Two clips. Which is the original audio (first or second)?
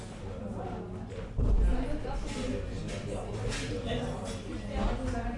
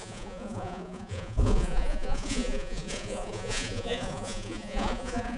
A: first